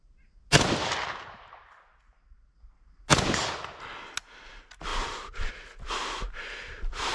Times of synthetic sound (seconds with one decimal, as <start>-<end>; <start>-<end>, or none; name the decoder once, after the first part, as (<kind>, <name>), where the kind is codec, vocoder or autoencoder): 4.9-5.5 (vocoder, BigVGAN v2)